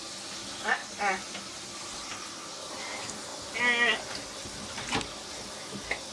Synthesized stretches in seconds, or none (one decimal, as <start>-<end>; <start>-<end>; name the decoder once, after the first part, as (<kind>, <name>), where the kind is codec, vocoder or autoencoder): none